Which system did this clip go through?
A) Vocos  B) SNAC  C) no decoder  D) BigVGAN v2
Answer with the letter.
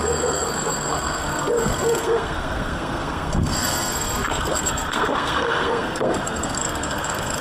B